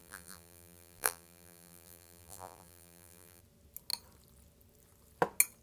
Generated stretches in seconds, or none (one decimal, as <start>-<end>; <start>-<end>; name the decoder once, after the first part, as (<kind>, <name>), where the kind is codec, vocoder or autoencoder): 0.0-3.4 (vocoder, BigVGAN v2)